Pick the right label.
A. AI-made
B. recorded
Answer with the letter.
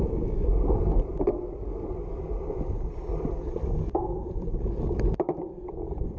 B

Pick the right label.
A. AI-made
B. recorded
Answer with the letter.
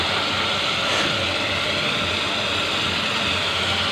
B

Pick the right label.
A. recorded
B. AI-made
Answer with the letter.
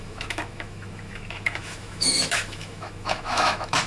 B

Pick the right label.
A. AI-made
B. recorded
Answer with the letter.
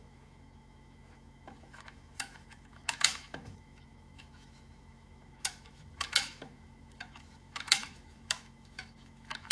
A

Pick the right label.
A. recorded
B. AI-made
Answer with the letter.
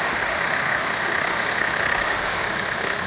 B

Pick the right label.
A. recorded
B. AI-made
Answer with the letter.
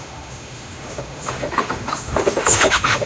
B